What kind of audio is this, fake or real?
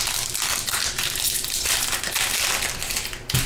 real